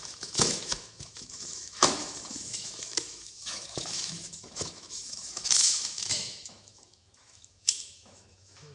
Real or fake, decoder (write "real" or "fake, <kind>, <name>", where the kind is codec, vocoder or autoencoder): fake, autoencoder, DAC-VAE